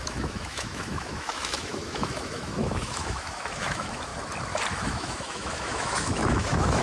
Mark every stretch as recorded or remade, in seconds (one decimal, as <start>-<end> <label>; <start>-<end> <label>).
0.0-4.1 remade; 4.1-4.7 recorded; 4.7-6.8 remade